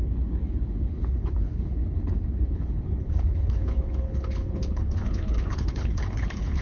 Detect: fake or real fake